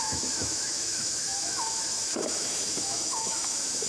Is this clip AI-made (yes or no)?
yes